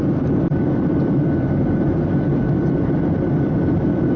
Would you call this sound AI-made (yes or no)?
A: no